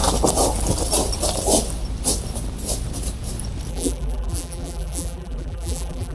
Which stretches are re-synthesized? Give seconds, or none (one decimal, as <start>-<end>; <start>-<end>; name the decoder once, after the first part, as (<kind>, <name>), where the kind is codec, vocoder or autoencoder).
3.7-6.1 (vocoder, BigVGAN v2)